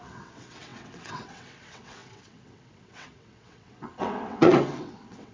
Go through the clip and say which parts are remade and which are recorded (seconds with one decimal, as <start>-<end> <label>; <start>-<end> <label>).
0.0-5.3 remade